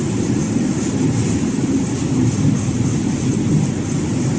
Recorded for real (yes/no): yes